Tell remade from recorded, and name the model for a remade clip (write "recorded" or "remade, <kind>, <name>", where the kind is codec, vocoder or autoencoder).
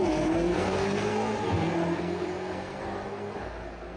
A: remade, codec, SNAC